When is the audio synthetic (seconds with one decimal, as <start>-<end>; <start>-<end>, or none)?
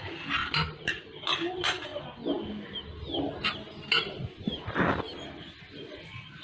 none